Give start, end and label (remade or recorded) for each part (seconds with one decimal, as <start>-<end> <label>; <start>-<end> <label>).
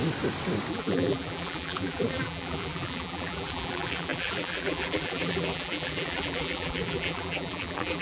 0.0-0.7 recorded; 0.7-8.0 remade